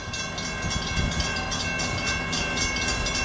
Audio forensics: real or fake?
real